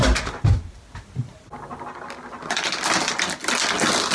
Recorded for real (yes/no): yes